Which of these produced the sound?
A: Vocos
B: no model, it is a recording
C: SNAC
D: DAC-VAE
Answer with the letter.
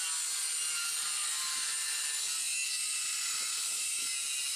B